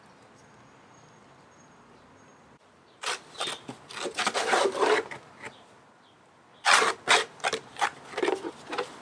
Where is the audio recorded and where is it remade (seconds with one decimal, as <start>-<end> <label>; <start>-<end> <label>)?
0.0-7.9 remade; 7.9-8.5 recorded; 8.5-9.0 remade